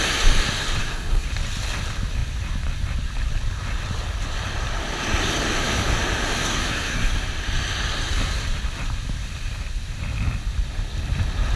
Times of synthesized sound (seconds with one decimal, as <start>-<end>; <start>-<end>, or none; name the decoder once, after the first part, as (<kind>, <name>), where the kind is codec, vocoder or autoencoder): 0.8-1.3 (codec, SNAC); 6.4-7.1